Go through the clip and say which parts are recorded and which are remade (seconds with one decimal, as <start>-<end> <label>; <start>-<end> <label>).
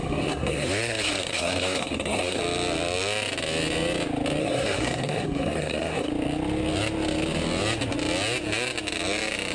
0.0-2.4 remade; 2.4-4.4 recorded; 4.4-6.1 remade; 6.1-9.5 recorded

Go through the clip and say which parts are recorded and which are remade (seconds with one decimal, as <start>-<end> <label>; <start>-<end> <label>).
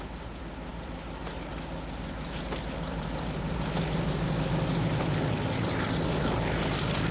0.0-7.1 recorded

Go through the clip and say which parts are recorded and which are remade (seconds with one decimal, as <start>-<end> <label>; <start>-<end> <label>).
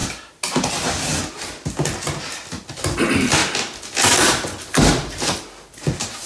0.0-6.3 recorded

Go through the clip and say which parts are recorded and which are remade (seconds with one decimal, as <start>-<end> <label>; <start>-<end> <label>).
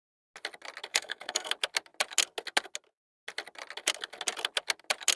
0.0-0.9 recorded; 0.9-1.5 remade; 1.5-5.2 recorded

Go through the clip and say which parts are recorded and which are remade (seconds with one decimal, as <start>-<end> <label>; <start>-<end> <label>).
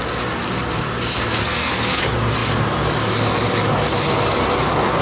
0.0-1.4 recorded; 1.4-2.0 remade; 2.0-5.0 recorded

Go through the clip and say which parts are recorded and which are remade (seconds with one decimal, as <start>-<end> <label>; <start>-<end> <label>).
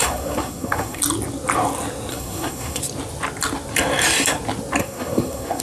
0.0-1.0 remade; 1.0-2.1 recorded; 2.1-2.8 remade; 2.8-4.8 recorded; 4.8-5.6 remade